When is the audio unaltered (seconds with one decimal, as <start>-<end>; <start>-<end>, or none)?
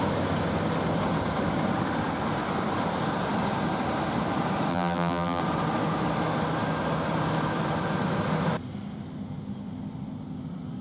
0.0-4.7; 5.4-10.8